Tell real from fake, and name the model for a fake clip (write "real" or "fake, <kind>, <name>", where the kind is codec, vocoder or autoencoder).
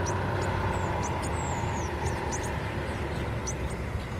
real